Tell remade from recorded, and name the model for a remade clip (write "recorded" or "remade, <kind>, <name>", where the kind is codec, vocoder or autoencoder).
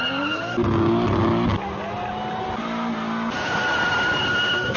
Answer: recorded